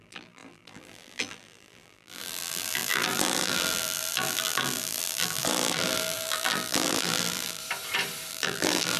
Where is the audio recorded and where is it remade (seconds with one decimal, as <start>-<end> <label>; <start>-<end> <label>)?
0.0-7.6 remade; 7.6-8.3 recorded; 8.3-9.0 remade